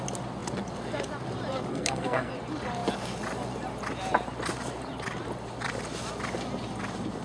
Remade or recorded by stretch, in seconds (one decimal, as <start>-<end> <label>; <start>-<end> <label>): 0.0-1.7 recorded; 1.7-2.3 remade; 2.3-7.2 recorded